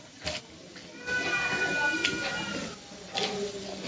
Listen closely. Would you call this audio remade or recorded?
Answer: recorded